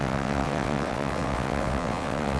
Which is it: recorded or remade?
remade